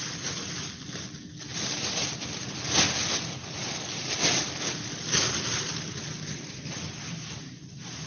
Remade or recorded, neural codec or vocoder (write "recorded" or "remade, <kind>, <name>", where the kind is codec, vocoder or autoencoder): recorded